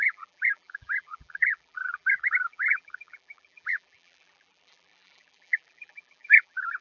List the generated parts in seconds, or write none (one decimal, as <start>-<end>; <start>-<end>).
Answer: 0.0-6.8